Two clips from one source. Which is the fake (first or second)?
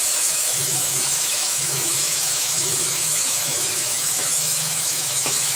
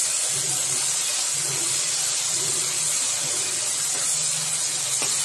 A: first